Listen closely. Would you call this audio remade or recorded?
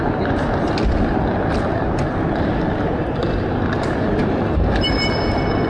recorded